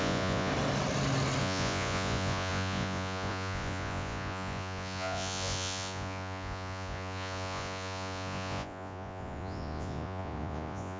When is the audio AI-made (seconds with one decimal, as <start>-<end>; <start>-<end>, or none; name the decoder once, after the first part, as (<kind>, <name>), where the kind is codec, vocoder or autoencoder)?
0.0-0.5 (vocoder, Vocos); 1.4-11.0